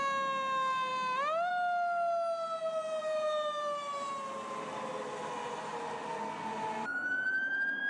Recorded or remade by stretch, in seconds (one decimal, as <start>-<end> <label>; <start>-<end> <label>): 0.0-7.9 recorded

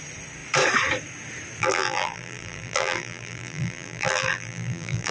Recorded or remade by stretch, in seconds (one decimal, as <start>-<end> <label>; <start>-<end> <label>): 0.0-1.6 recorded; 1.6-5.1 remade